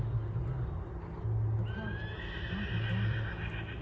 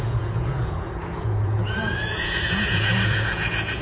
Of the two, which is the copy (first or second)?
second